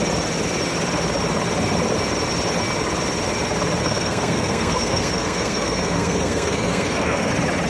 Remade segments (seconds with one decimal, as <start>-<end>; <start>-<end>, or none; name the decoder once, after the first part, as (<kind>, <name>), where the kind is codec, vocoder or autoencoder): 3.8-7.3 (codec, SNAC)